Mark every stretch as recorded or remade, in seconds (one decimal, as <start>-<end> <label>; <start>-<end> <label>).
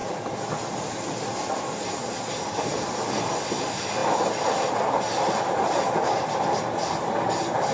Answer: 0.0-7.7 recorded